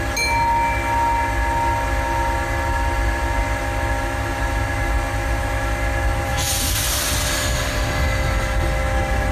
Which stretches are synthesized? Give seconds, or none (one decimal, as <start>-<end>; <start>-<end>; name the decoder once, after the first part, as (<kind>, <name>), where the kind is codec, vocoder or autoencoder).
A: 6.3-7.0 (vocoder, BigVGAN v2)